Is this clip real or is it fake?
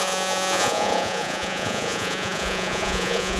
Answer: fake